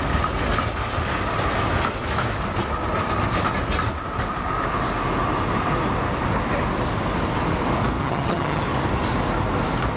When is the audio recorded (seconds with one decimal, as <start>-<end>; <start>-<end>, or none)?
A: 0.0-8.0; 8.6-10.0